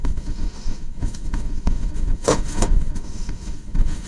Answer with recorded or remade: remade